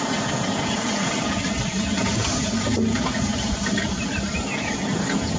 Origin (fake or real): real